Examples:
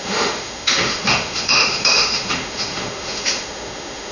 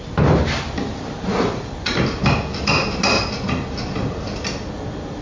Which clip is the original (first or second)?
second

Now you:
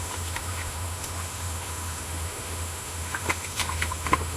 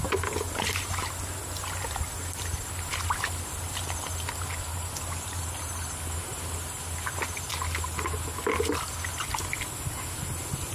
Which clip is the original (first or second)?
second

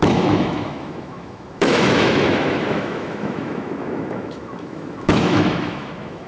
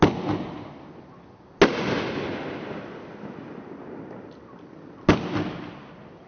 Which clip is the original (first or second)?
second